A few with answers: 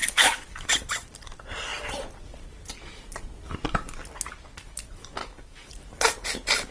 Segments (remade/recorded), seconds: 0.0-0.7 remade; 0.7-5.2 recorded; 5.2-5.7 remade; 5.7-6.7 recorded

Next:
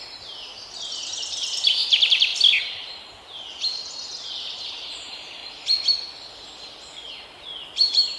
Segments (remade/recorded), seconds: 0.0-2.3 remade; 2.3-4.4 recorded; 4.4-5.4 remade; 5.4-7.7 recorded; 7.7-8.2 remade

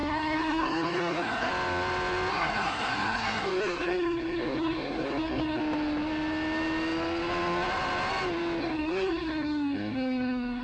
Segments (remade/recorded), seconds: 0.0-1.5 remade; 1.5-2.3 recorded; 2.3-5.6 remade; 5.6-8.6 recorded; 8.6-10.6 remade

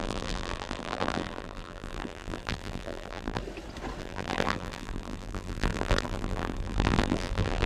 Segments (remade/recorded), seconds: 0.0-3.4 remade; 3.4-4.0 recorded; 4.0-7.7 remade

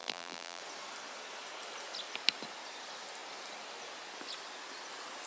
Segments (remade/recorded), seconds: 0.0-0.6 remade; 0.6-5.3 recorded